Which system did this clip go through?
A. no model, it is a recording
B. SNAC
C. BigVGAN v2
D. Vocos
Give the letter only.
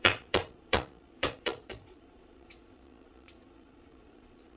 D